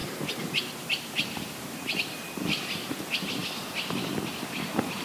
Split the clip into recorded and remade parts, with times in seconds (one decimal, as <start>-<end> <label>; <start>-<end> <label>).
0.0-5.0 recorded